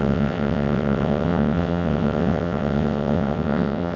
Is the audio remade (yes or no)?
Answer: yes